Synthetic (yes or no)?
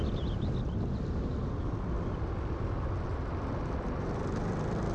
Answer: no